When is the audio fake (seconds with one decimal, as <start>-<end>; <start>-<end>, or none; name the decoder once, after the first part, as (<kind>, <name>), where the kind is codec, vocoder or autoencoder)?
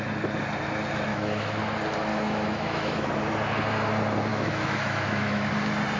1.1-1.6 (autoencoder, DAC-VAE); 2.1-3.2; 4.3-5.5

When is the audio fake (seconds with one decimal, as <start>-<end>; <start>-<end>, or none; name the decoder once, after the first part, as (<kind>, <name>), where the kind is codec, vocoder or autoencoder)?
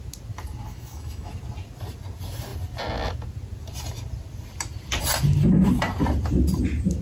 0.7-1.3 (autoencoder, DAC-VAE)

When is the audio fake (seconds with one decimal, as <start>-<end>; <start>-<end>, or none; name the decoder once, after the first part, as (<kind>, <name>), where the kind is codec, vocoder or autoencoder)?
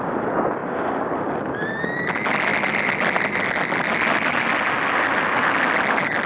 none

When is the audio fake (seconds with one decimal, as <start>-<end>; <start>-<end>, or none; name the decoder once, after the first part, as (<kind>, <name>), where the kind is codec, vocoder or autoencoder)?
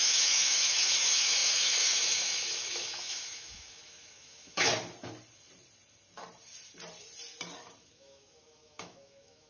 0.0-4.7 (autoencoder, DAC-VAE); 7.8-9.5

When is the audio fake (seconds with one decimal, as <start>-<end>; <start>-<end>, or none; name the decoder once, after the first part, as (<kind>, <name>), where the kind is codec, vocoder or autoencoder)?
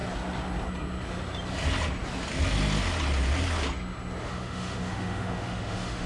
4.2-6.1 (autoencoder, DAC-VAE)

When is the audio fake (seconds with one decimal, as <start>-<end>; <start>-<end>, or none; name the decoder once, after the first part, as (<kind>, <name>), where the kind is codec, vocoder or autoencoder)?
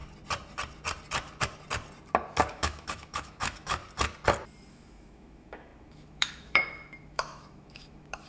2.5-3.8 (autoencoder, DAC-VAE); 4.7-8.3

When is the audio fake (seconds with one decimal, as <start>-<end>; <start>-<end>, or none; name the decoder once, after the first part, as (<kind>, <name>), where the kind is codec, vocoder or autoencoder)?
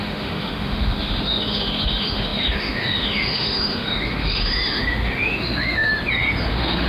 0.0-5.9 (autoencoder, DAC-VAE); 6.5-6.9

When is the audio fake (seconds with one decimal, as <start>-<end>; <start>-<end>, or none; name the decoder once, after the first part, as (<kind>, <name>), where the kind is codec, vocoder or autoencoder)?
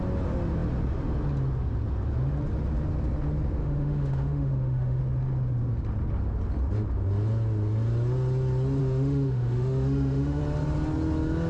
3.6-5.0 (autoencoder, DAC-VAE); 8.8-10.4